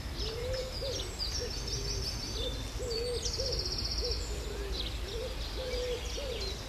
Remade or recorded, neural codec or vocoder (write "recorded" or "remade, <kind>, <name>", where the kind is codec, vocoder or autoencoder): recorded